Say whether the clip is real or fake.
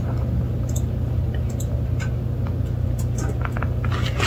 real